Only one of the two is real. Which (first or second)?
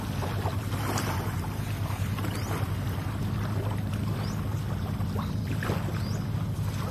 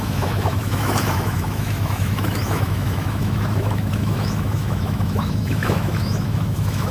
first